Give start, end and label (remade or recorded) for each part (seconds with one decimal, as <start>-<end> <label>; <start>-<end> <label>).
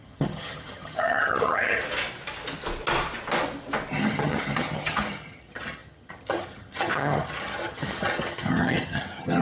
0.0-1.8 remade; 1.8-3.9 recorded; 3.9-9.4 remade